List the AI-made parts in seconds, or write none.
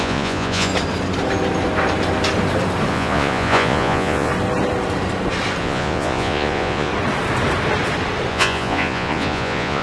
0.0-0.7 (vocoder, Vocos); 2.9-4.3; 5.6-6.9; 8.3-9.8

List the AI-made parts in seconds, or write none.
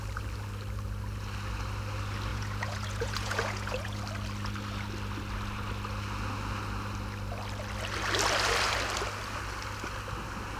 2.3-4.0 (vocoder, Vocos)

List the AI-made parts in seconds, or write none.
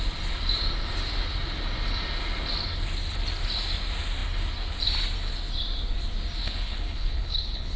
6.4-7.8 (codec, HILCodec)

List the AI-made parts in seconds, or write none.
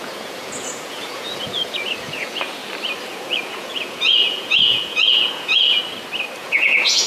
0.0-2.6 (vocoder, Vocos); 3.1-5.8; 6.4-7.1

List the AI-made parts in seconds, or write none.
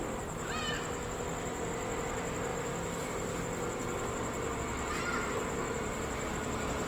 none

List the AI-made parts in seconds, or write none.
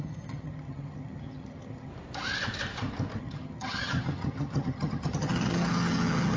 0.0-1.9 (vocoder, HiFi-GAN); 3.2-6.4